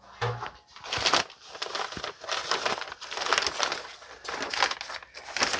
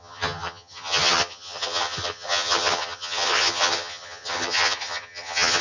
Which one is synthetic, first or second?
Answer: second